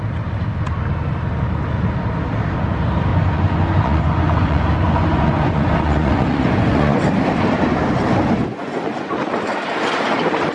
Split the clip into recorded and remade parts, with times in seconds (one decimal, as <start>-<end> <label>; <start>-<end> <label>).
0.0-3.1 recorded; 3.1-7.0 remade; 7.0-8.4 recorded; 8.4-9.1 remade; 9.1-10.5 recorded